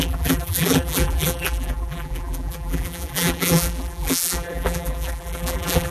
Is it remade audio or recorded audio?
remade